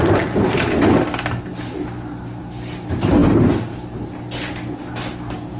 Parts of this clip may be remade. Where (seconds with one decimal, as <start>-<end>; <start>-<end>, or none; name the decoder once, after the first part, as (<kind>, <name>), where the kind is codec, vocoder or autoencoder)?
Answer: none